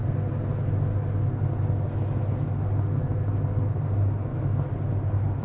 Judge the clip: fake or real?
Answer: real